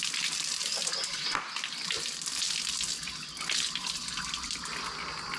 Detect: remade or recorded recorded